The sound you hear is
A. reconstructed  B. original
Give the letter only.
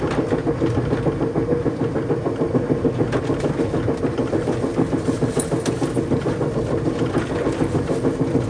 B